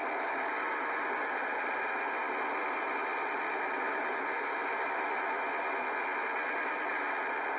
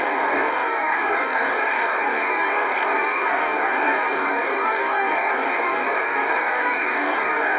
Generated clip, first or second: second